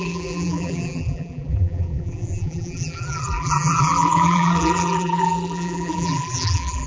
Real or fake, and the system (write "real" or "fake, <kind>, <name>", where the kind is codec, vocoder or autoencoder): fake, vocoder, BigVGAN v2